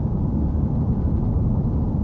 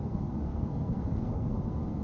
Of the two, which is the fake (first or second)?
second